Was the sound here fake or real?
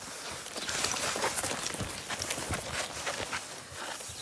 real